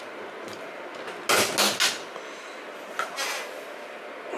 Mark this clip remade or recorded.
recorded